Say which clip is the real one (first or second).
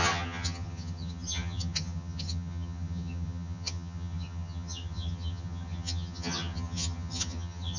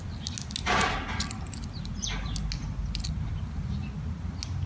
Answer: second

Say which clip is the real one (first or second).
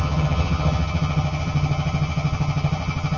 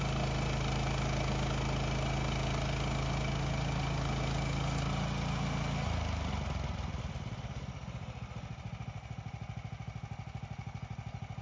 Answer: second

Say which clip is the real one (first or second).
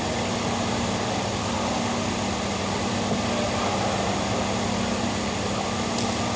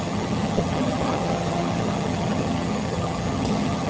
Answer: first